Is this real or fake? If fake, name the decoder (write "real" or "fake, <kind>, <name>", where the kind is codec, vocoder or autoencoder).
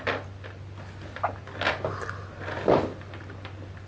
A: real